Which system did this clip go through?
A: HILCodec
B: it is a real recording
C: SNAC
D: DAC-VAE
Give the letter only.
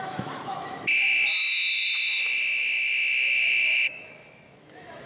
D